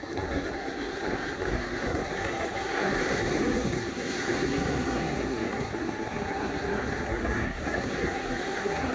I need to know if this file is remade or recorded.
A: remade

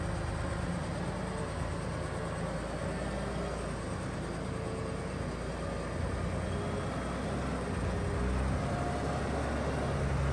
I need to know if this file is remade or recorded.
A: recorded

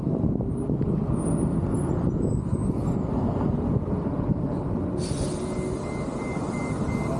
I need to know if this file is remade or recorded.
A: recorded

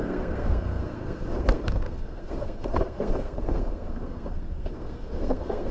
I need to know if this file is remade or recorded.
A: remade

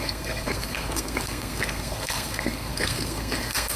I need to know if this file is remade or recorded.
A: remade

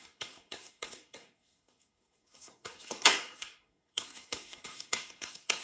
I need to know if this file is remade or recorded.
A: remade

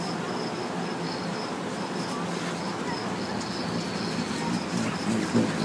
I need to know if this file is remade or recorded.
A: recorded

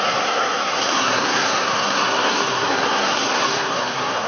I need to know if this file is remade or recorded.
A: remade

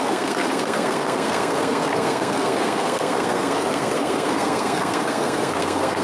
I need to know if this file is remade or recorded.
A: remade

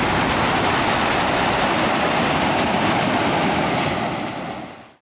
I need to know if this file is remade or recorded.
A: recorded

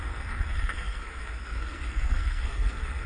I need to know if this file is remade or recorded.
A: remade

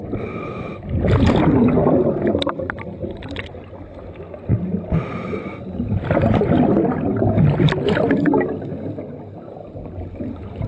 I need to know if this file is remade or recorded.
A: recorded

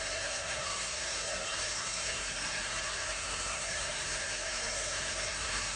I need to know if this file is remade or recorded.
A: remade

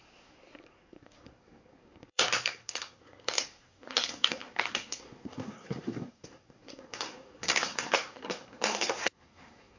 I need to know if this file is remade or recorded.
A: remade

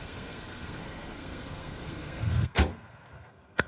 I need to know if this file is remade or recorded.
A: remade